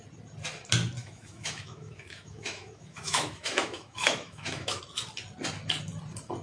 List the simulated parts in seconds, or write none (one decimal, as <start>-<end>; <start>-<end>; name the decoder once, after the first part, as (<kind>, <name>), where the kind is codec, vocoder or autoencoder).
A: 1.0-4.8 (autoencoder, DAC-VAE)